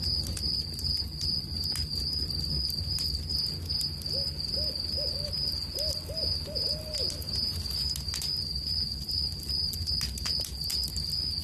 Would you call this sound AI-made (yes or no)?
no